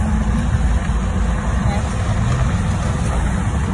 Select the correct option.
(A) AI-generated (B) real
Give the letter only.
B